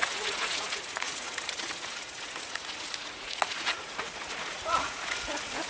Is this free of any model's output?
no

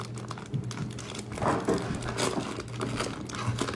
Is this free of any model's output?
yes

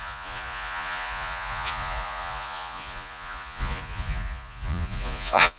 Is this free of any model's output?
no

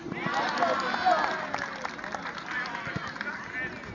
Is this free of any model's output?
yes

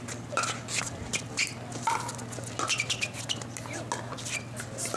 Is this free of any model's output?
yes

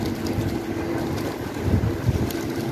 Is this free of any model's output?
yes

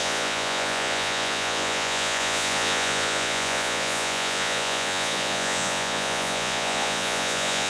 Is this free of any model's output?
no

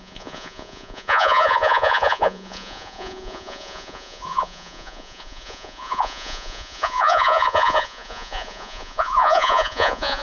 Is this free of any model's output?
no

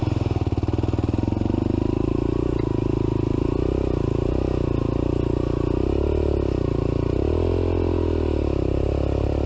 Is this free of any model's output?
yes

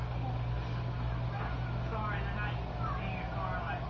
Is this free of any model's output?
yes